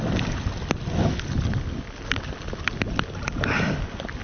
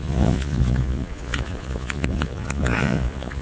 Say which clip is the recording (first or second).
first